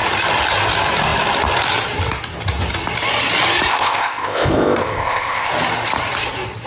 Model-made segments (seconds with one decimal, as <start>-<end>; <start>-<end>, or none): 3.7-5.5